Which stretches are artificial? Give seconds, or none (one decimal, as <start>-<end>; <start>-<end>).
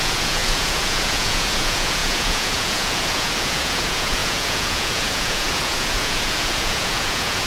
0.0-7.5